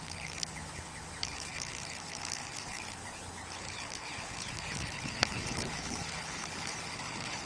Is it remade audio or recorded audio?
remade